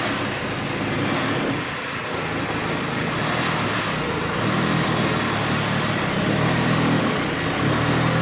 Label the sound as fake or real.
real